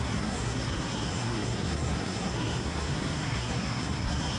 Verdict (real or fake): fake